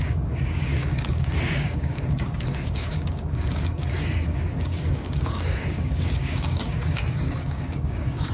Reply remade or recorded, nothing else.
remade